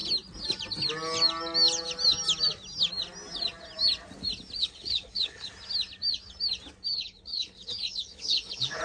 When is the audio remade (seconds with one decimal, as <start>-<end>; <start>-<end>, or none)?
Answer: 4.6-5.5; 6.9-8.8